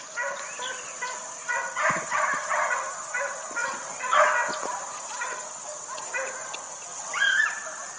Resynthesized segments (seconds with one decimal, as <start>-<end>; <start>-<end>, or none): 1.4-2.8; 3.6-4.5; 6.9-7.4